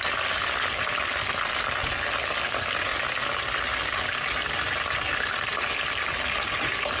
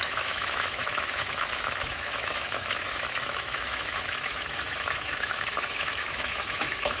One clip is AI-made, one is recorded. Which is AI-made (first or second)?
second